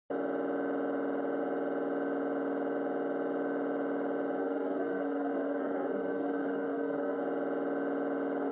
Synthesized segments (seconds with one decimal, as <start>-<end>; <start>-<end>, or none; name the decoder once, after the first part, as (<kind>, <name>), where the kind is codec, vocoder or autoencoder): 4.4-7.2 (codec, SNAC)